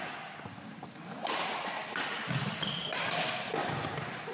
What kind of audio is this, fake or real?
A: real